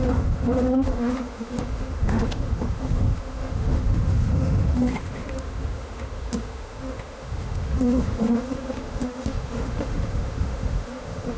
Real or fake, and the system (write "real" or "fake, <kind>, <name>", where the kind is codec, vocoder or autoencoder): fake, autoencoder, DAC-VAE